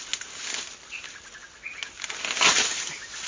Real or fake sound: real